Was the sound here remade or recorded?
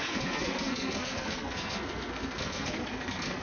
remade